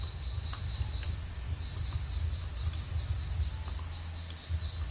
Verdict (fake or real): real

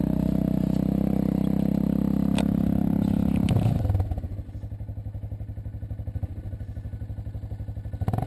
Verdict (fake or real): real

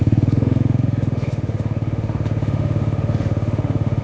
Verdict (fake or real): fake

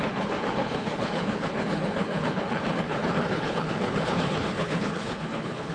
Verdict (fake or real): fake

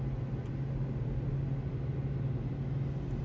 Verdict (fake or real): real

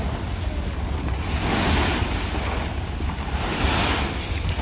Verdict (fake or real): real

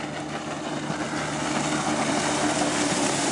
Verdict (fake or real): real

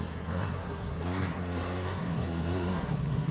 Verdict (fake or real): fake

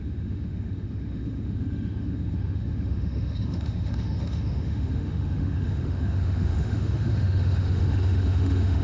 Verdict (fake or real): fake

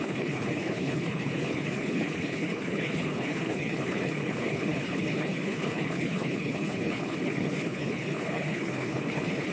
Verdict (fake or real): fake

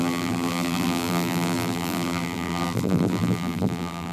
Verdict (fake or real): fake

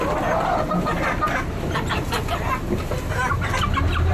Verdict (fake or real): real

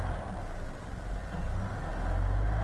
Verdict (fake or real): real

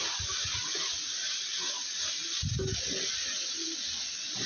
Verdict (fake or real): real